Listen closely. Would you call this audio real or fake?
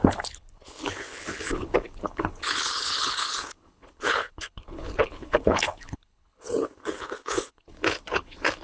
fake